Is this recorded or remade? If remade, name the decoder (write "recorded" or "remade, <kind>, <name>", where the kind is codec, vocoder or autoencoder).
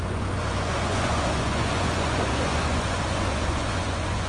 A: remade, vocoder, Vocos